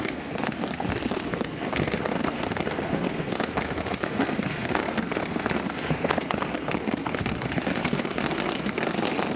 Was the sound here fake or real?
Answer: fake